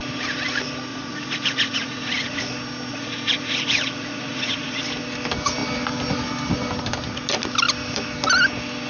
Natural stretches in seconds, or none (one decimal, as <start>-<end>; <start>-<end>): 0.0-0.9; 2.4-2.9; 4.8-8.9